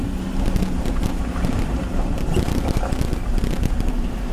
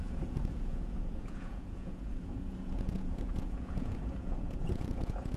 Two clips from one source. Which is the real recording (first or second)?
first